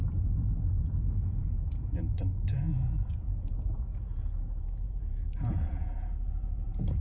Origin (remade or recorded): remade